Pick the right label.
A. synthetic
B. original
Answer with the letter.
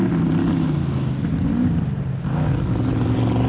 B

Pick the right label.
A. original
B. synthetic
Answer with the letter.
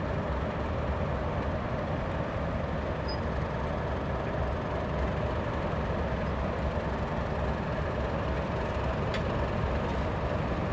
A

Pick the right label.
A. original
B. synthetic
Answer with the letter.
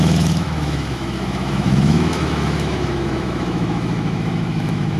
B